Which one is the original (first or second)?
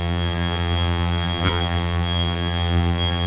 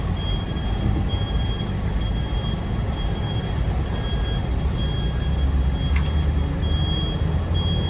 second